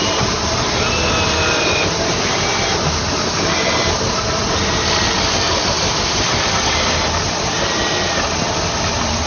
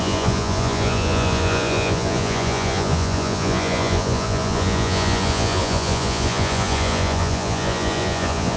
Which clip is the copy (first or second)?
second